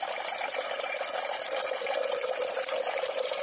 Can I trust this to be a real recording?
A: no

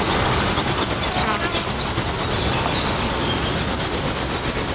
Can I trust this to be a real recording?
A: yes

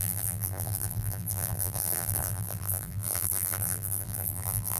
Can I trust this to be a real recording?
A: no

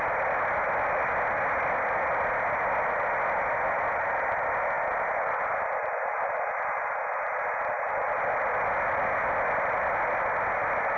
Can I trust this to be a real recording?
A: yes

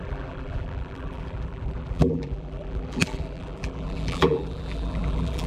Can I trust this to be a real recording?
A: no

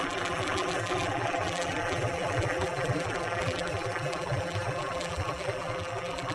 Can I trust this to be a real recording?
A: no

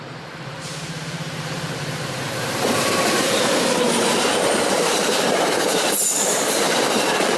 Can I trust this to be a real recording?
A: no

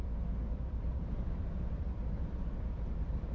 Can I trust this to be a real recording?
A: no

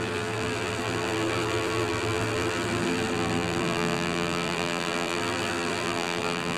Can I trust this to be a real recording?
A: no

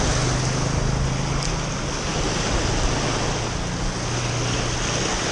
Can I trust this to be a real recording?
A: yes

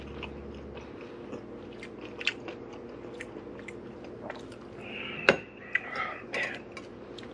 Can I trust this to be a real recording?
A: yes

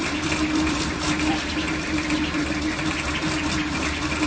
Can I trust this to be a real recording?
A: no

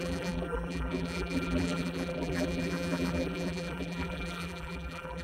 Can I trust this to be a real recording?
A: no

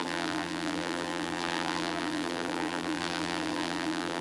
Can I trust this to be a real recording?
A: no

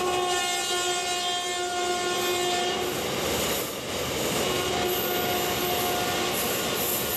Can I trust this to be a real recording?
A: yes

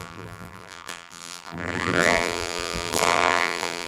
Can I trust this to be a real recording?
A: no